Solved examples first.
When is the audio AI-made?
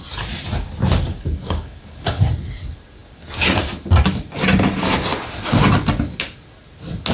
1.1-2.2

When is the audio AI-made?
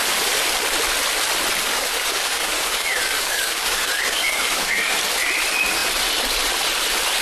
1.6-4.9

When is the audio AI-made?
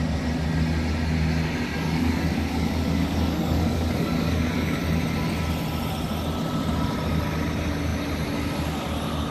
1.7-4.8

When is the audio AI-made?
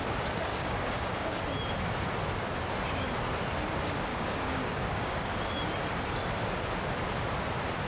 0.5-1.4; 4.1-5.3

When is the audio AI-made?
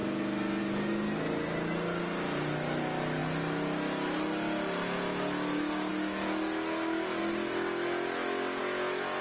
none